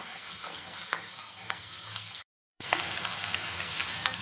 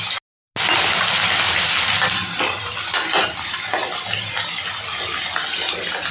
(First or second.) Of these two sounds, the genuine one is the second